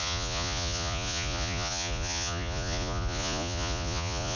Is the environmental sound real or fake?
fake